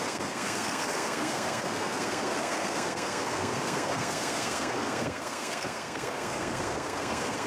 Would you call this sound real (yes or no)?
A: no